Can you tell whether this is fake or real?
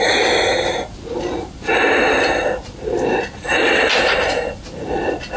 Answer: real